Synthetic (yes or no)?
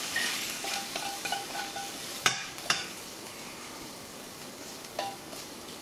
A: yes